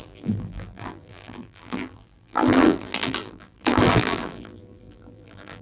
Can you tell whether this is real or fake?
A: fake